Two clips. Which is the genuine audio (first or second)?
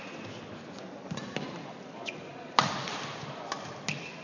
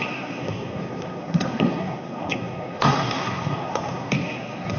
first